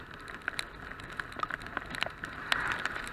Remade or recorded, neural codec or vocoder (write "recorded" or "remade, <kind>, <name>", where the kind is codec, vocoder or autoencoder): recorded